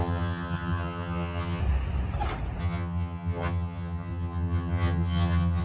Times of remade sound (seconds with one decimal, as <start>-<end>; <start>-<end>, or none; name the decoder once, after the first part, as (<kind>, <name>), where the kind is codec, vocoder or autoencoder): 0.0-1.6 (vocoder, HiFi-GAN); 2.6-5.6

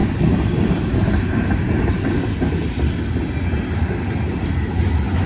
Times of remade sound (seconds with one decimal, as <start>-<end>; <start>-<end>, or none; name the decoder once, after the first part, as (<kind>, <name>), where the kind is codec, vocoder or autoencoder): none

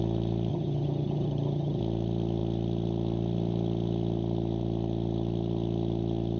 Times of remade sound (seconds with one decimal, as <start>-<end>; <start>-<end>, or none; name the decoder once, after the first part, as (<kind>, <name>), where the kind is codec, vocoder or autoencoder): 0.5-1.8 (vocoder, HiFi-GAN)

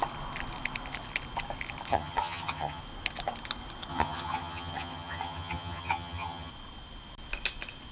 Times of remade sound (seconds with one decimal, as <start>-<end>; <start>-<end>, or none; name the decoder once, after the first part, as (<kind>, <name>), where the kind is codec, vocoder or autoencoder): 1.9-2.8 (vocoder, HiFi-GAN); 3.9-6.5

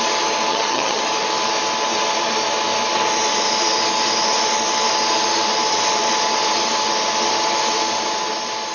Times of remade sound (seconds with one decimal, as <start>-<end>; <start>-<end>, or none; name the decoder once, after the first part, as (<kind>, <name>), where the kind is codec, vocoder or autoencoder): 0.5-1.0 (vocoder, HiFi-GAN)

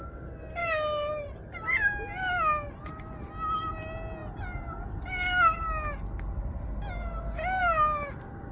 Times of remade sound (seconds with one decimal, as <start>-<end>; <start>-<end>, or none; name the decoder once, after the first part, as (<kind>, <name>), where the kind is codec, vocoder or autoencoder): none

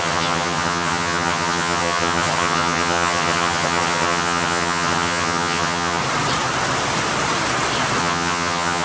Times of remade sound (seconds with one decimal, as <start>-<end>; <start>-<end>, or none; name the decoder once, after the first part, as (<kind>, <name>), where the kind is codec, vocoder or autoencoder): 0.0-6.0 (vocoder, HiFi-GAN); 8.0-8.8